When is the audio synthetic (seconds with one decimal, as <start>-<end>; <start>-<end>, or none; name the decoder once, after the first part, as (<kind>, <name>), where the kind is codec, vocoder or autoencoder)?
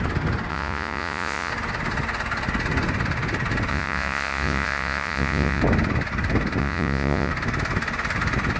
0.5-1.5 (vocoder, Vocos); 3.7-5.6; 6.6-7.3